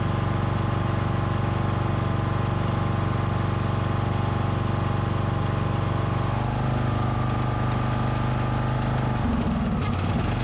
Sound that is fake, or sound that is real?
real